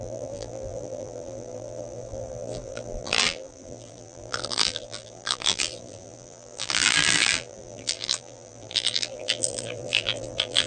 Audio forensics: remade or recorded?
remade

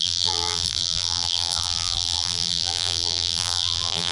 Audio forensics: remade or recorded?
remade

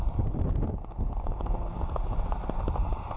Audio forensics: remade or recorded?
recorded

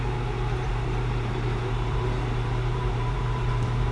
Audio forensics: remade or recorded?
remade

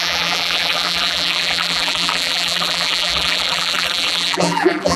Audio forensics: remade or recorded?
remade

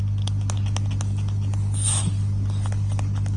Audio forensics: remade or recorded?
recorded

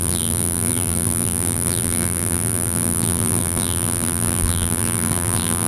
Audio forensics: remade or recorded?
remade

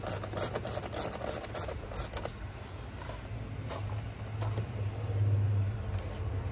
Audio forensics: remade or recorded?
recorded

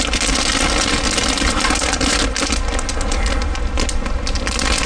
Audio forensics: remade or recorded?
recorded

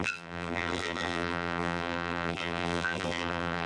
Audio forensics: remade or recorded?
remade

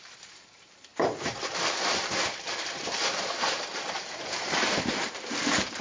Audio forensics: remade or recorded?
remade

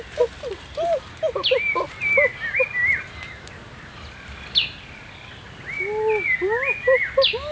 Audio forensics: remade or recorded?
recorded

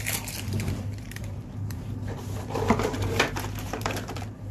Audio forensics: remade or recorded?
remade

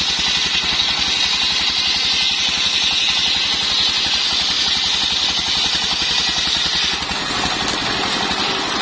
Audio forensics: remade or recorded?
recorded